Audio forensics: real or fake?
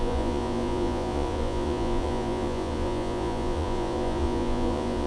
fake